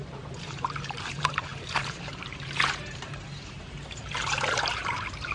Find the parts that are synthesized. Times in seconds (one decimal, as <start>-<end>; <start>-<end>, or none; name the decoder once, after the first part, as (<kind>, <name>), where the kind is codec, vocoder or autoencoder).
0.0-5.3 (vocoder, BigVGAN v2)